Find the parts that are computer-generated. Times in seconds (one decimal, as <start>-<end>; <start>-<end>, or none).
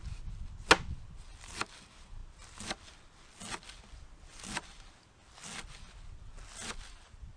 none